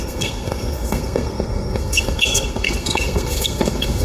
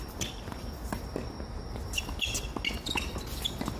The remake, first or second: first